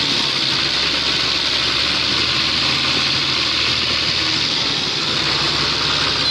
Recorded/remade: recorded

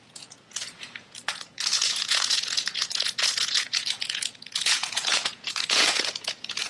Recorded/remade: remade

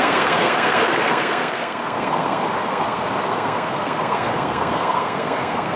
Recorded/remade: remade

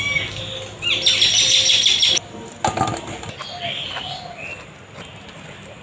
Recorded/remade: recorded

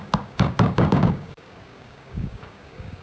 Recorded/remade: remade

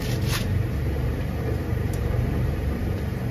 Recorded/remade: remade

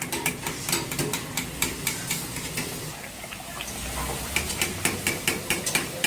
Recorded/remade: recorded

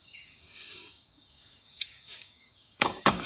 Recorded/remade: remade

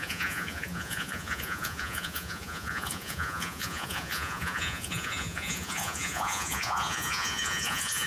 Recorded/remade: remade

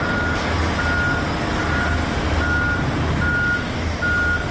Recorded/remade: recorded